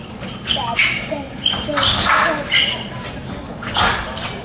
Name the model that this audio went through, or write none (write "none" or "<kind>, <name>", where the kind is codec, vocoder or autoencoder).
none